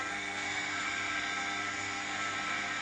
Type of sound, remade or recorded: remade